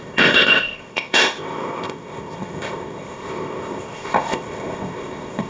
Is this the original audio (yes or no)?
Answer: no